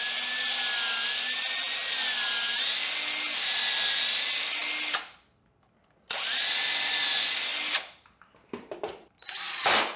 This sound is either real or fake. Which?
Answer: real